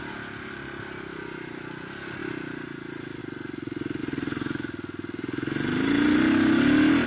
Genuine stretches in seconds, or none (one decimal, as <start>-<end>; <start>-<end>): 0.0-7.1